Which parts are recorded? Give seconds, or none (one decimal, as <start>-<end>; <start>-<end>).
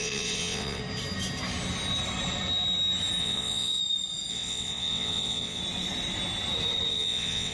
0.8-3.2; 3.8-4.3; 5.6-6.9